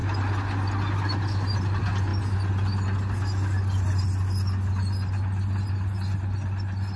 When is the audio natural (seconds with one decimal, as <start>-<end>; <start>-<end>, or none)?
0.0-7.0